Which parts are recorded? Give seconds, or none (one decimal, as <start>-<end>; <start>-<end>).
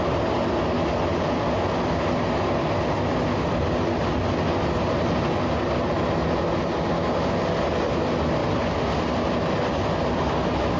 0.0-10.8